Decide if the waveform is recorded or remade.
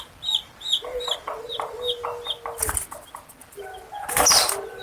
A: recorded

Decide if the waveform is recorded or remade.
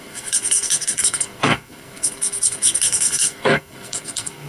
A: remade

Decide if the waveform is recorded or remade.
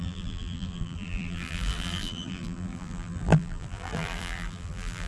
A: remade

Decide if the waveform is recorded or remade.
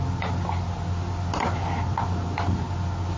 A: recorded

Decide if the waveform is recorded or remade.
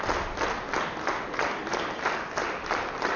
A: recorded